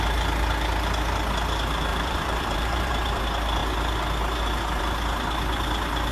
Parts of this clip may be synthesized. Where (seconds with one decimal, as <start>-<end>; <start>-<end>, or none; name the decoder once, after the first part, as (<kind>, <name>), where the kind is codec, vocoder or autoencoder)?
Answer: 1.9-3.2 (vocoder, BigVGAN v2)